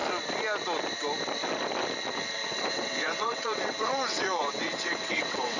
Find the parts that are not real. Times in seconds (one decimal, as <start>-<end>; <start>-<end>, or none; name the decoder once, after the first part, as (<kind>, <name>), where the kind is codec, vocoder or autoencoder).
2.4-5.6 (vocoder, WaveNeXt)